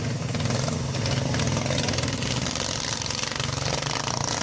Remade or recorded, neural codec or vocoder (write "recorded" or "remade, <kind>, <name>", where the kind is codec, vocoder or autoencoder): recorded